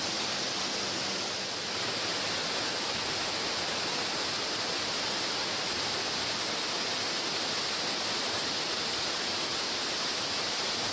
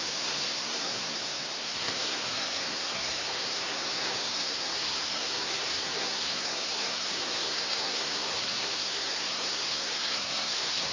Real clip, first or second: first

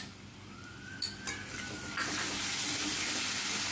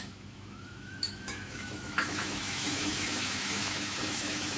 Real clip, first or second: first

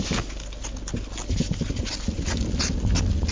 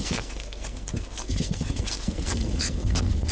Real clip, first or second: first